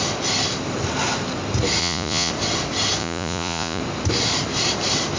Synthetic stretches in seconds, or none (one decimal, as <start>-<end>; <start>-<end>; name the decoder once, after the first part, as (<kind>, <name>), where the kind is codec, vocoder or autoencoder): 1.8-2.3 (vocoder, Vocos); 3.0-3.8